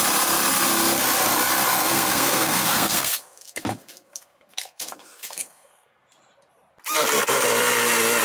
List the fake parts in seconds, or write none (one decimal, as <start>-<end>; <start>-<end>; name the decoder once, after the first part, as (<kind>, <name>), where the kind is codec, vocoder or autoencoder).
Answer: 1.7-6.0 (codec, SNAC)